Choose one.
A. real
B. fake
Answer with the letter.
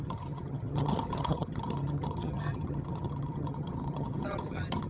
B